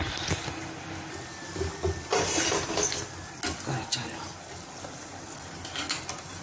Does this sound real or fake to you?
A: real